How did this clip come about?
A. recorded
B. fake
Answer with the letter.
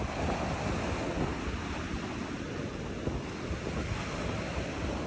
A